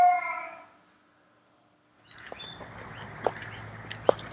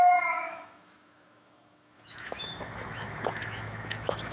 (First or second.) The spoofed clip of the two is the second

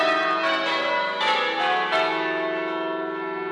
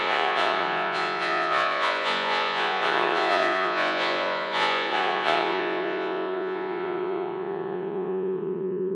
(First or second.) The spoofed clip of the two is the second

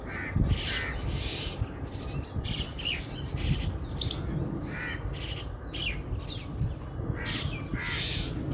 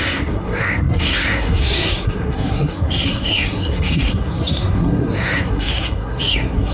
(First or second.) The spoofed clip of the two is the second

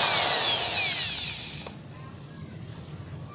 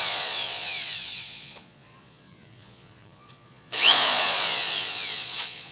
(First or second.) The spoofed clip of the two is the second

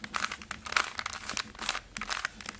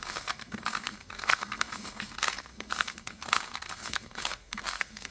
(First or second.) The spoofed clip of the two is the second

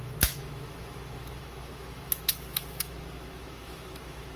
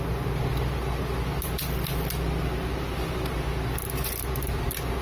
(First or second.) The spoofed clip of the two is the first